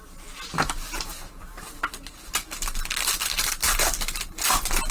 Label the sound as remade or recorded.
recorded